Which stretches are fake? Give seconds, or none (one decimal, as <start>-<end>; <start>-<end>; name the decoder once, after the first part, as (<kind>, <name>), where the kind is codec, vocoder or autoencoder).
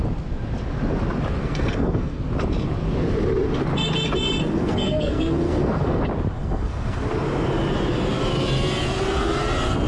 1.4-2.2 (codec, SNAC); 4.6-6.0; 6.4-7.0